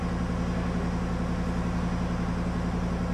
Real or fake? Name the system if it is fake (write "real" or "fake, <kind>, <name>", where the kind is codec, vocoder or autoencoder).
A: real